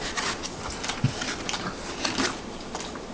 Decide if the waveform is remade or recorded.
recorded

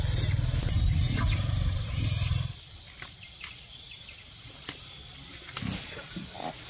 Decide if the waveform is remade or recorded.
recorded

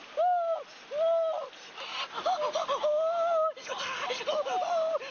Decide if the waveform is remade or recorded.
recorded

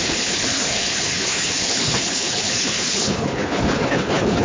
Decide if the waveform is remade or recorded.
remade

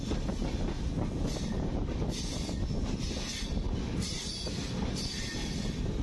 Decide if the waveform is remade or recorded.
recorded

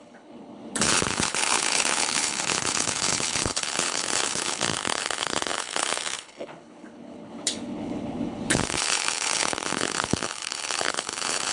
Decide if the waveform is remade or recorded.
remade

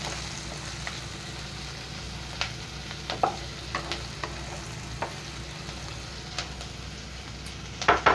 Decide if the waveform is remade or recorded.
recorded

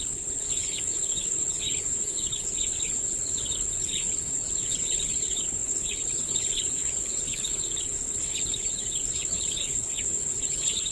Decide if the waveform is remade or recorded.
remade